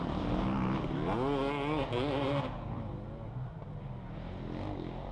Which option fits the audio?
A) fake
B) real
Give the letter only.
B